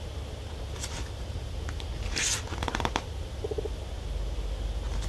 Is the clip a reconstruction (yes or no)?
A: no